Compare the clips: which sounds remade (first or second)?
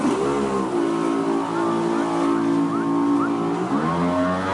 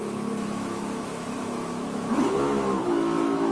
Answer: second